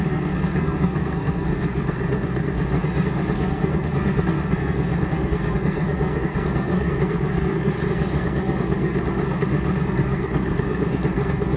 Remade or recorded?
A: remade